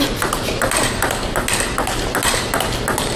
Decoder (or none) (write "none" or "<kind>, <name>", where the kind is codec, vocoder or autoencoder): none